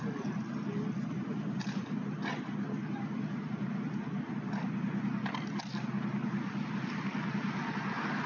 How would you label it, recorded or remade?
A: recorded